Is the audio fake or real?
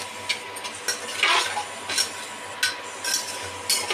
real